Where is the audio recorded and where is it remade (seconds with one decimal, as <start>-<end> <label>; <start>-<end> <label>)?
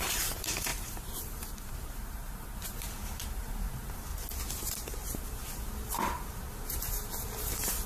0.0-4.1 remade; 4.1-5.2 recorded; 5.2-7.9 remade